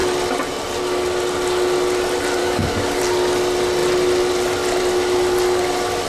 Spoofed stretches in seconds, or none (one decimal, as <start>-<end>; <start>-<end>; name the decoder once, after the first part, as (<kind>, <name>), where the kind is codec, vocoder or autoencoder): 2.4-3.0 (codec, DAC)